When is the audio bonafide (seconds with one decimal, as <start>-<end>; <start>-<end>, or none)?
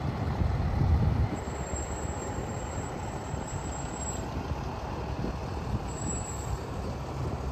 3.6-5.5